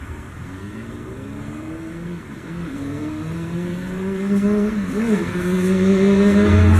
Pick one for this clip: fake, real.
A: fake